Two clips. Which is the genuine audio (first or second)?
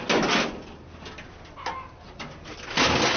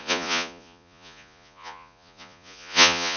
first